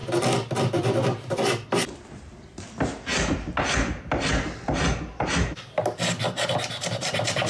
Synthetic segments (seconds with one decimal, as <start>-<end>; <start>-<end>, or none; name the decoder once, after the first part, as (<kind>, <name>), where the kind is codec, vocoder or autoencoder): none